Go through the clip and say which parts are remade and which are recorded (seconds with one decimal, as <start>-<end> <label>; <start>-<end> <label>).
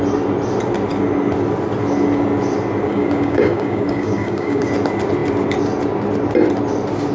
0.0-2.9 recorded; 2.9-4.7 remade; 4.7-7.1 recorded